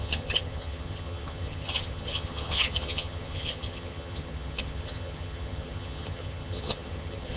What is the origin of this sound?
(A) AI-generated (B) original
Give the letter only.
A